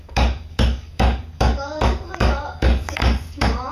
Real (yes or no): no